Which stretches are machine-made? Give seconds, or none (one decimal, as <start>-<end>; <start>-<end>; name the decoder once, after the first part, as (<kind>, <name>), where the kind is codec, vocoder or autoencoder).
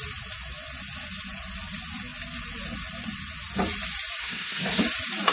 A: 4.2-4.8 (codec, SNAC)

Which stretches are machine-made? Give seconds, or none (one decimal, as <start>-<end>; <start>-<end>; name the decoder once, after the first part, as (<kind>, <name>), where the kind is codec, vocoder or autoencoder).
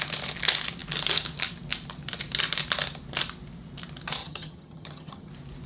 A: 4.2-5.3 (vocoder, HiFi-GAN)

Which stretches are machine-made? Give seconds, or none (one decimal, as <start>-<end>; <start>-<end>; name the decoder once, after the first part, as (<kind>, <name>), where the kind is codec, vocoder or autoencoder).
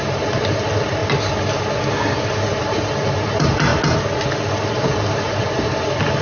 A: 0.0-1.0 (vocoder, BigVGAN v2); 2.6-3.7; 4.7-6.2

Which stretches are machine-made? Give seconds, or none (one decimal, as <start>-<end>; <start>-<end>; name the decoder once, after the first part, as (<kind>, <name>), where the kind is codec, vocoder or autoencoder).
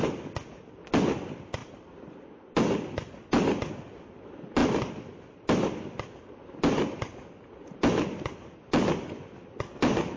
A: none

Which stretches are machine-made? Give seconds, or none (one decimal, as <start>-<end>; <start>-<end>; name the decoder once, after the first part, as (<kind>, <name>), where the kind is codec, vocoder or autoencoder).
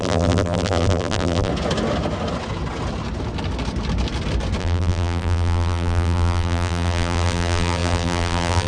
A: 0.0-1.5 (vocoder, BigVGAN v2); 4.6-8.7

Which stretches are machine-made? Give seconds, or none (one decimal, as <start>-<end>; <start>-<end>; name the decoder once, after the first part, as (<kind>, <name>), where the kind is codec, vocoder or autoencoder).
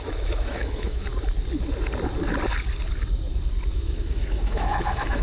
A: 0.0-1.1 (autoencoder, DAC-VAE); 3.7-5.2